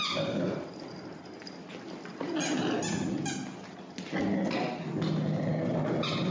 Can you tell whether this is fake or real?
real